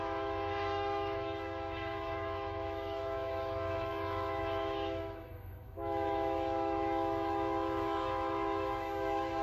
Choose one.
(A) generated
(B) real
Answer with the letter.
A